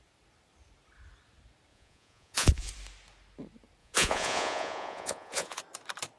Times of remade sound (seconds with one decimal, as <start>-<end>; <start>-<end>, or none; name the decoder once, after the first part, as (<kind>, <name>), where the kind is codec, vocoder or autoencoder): 1.7-2.7 (vocoder, Vocos); 3.8-5.6